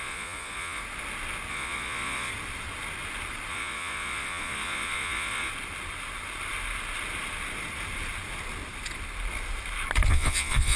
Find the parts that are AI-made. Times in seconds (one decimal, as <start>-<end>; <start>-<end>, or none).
0.0-0.8; 1.5-2.3; 3.5-5.5; 10.1-10.8